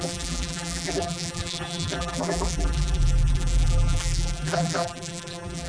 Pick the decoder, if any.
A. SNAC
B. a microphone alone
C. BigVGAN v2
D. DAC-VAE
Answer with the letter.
C